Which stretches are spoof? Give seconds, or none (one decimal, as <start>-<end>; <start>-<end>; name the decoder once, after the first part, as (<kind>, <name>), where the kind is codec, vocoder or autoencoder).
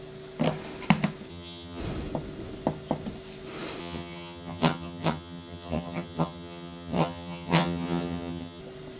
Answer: 1.3-1.8 (vocoder, HiFi-GAN); 3.8-8.6